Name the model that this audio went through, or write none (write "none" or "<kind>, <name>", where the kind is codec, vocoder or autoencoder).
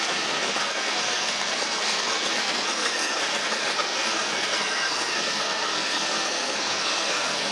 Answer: codec, SNAC